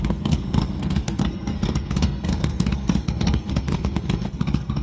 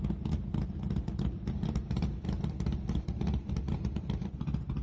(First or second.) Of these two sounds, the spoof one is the first